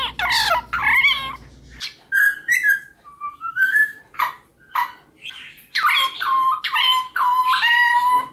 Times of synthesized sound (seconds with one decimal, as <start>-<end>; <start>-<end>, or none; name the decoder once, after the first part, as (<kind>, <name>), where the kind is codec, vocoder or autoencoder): 3.2-4.0 (codec, SNAC)